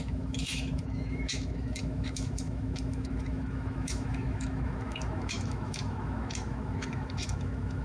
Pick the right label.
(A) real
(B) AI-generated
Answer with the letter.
B